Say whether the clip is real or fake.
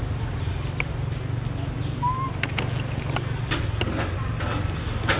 real